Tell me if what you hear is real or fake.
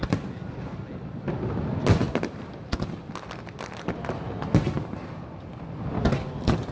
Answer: real